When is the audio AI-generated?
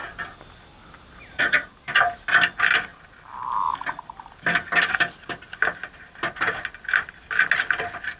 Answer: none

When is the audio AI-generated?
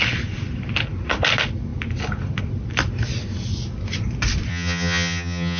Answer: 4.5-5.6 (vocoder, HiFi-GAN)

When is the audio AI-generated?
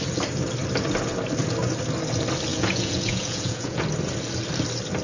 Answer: 2.5-3.8 (vocoder, Vocos)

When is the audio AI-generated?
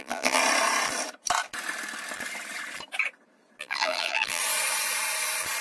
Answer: 0.0-0.4 (vocoder, BigVGAN v2); 3.6-4.4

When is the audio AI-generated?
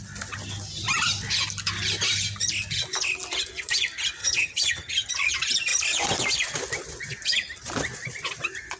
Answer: 4.2-5.1 (vocoder, HiFi-GAN)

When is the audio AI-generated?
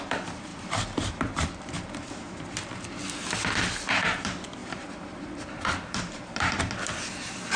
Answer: 0.5-2.7 (vocoder, BigVGAN v2); 4.6-6.6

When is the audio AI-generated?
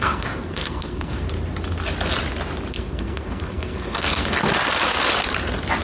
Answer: 0.0-1.3 (codec, SNAC); 2.7-4.4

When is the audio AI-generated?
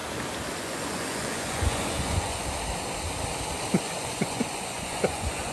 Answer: 0.6-2.4 (vocoder, Vocos); 3.8-5.5